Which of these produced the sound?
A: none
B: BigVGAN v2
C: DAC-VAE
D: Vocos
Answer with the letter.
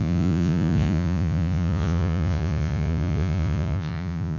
D